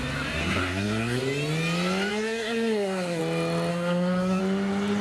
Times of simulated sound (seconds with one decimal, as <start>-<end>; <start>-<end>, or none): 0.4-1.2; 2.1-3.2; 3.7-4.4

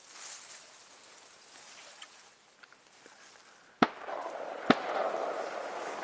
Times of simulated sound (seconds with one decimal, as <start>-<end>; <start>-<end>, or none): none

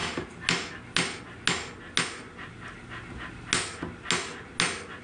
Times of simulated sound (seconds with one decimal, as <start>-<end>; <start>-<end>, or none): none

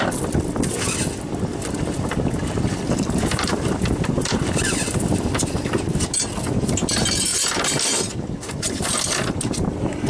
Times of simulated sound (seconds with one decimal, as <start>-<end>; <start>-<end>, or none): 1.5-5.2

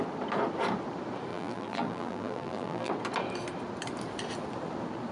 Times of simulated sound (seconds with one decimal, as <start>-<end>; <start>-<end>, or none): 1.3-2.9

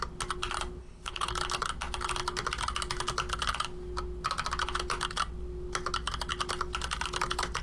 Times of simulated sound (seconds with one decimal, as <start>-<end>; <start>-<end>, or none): 0.8-1.3

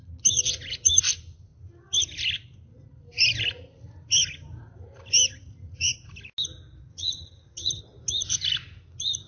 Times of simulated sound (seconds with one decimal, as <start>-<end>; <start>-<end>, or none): 6.9-7.8